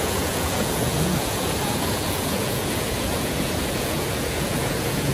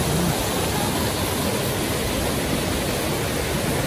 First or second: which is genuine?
second